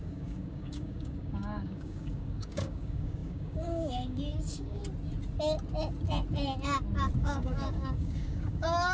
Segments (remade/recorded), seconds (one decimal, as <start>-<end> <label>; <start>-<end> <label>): 0.0-4.8 remade; 4.8-7.2 recorded; 7.2-8.9 remade